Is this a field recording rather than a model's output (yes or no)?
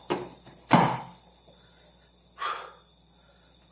yes